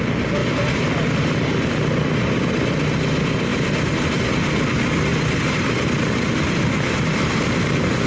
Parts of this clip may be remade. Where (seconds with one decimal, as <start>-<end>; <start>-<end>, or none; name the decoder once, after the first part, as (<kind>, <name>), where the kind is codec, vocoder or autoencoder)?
3.5-4.3 (vocoder, BigVGAN v2); 5.1-8.1